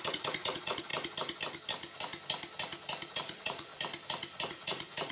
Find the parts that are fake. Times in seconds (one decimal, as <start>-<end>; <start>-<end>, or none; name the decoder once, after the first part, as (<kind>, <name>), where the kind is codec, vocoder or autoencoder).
0.0-0.9 (vocoder, Vocos); 3.1-3.7; 4.5-5.1